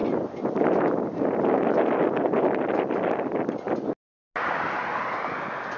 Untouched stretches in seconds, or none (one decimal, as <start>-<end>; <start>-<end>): 0.0-5.8